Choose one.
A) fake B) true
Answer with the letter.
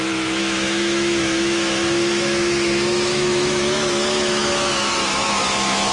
A